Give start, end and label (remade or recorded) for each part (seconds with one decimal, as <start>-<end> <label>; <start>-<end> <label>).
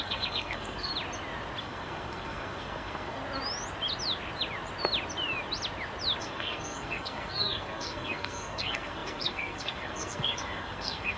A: 0.0-0.9 remade; 0.9-1.6 recorded; 1.6-3.2 remade; 3.2-6.2 recorded; 6.2-11.2 remade